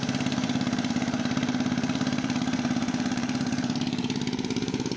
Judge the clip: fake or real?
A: fake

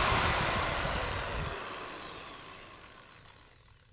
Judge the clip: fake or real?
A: real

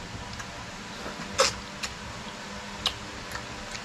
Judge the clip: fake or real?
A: real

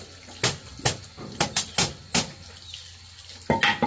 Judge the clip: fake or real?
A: real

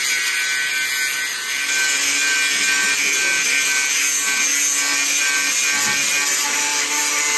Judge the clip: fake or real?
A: real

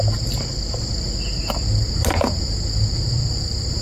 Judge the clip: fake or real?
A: real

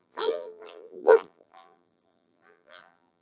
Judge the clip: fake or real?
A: fake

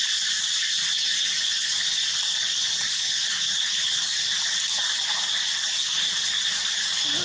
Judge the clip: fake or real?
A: real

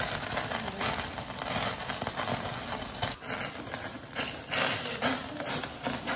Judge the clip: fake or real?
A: fake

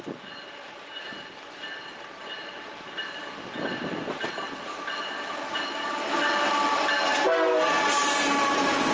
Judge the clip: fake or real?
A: real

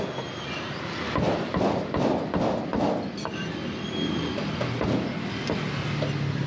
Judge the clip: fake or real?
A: real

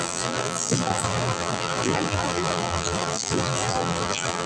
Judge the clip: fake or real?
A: fake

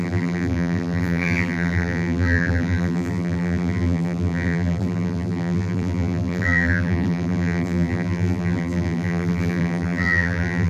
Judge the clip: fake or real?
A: fake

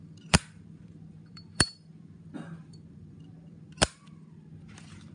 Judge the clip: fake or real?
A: fake